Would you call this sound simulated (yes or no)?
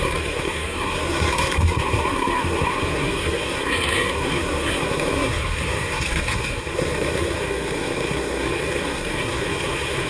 yes